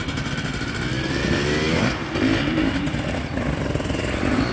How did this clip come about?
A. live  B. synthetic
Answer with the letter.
A